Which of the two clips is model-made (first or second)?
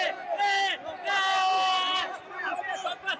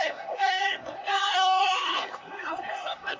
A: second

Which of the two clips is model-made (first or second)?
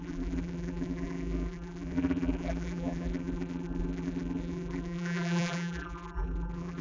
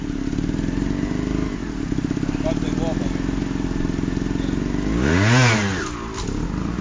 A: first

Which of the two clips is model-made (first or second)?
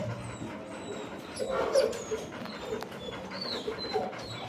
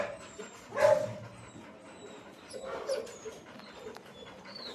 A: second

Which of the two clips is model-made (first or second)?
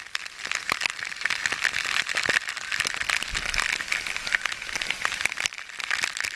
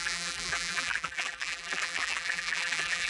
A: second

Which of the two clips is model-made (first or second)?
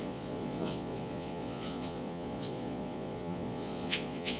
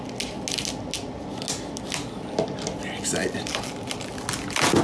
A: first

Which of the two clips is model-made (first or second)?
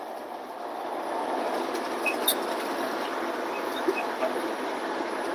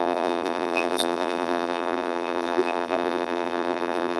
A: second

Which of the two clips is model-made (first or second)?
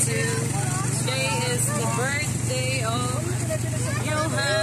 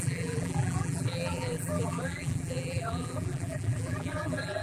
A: second